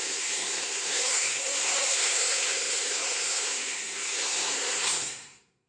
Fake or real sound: fake